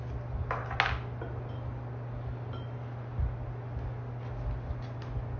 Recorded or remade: recorded